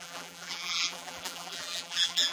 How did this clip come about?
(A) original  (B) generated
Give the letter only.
B